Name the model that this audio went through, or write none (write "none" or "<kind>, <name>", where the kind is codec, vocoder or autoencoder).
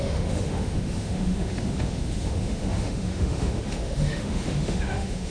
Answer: autoencoder, DAC-VAE